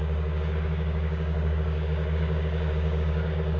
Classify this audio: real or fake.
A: fake